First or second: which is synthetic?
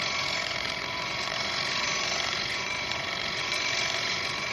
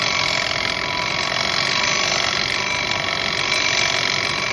first